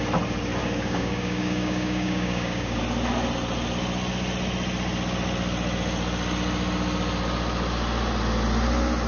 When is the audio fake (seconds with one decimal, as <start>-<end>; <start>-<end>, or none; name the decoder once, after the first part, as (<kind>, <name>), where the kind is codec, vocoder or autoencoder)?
0.6-2.8 (codec, DAC)